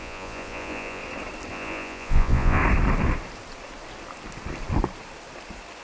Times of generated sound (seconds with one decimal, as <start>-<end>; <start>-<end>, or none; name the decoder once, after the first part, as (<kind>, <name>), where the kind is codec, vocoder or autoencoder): 0.0-1.0 (vocoder, Vocos); 1.5-2.6